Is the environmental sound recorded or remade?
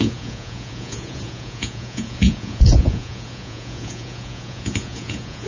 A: remade